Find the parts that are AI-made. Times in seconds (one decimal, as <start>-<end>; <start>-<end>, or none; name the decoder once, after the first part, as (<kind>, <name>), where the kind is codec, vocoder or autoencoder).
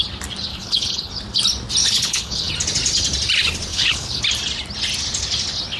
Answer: 0.5-1.1 (codec, HILCodec); 1.8-2.5; 3.7-4.2